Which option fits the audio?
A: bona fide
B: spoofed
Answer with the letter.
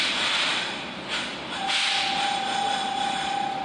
A